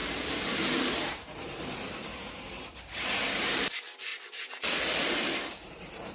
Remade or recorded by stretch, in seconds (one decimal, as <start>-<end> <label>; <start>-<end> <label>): 0.0-4.1 remade; 4.1-5.5 recorded; 5.5-6.1 remade